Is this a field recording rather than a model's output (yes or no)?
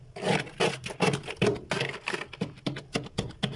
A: yes